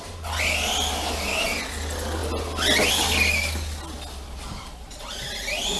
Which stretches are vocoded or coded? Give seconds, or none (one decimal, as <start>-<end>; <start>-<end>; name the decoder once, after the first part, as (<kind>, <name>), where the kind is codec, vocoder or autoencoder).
none